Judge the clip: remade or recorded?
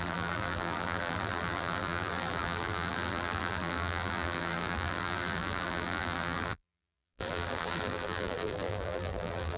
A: remade